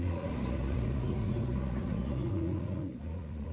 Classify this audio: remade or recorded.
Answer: remade